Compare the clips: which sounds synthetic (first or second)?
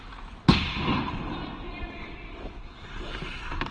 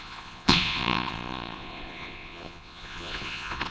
second